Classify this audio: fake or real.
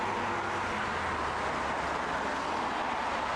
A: real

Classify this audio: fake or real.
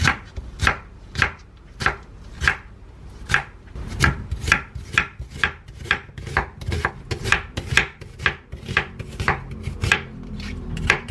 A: real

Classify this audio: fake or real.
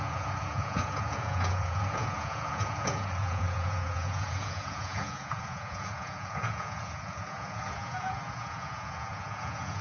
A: fake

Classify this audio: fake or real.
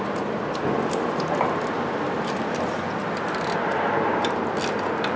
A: real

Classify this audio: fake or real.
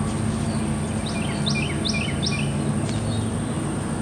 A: real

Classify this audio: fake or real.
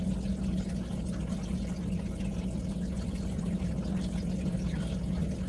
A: real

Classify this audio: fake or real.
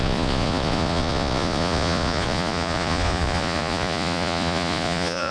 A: fake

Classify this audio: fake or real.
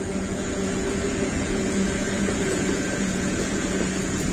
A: fake